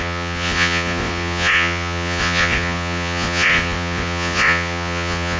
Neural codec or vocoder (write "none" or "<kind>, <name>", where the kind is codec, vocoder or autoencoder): vocoder, Vocos